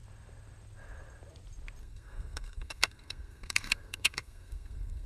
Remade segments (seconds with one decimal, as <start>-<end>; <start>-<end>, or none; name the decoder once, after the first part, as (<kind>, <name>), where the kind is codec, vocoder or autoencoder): 1.8-5.1 (codec, SNAC)